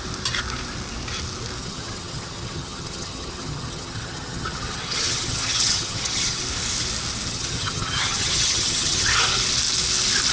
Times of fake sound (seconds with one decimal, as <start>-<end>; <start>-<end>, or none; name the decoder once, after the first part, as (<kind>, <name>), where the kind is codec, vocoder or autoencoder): 1.6-6.4 (vocoder, HiFi-GAN); 7.3-9.2